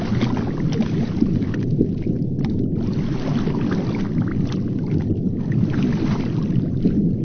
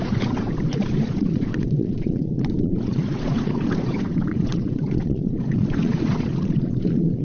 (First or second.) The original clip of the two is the first